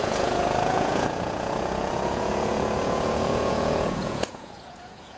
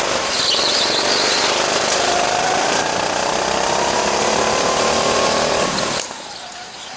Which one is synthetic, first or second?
first